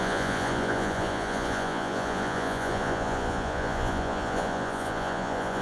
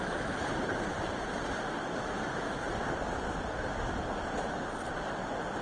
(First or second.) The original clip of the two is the second